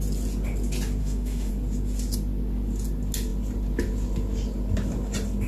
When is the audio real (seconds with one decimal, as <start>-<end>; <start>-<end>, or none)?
0.0-1.0; 1.5-5.5